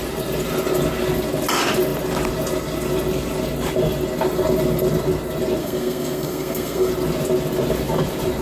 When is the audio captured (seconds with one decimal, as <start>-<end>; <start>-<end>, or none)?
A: 0.0-5.6; 6.9-8.4